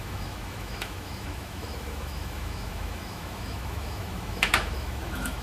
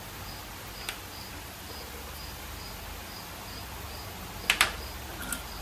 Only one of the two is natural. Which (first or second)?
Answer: second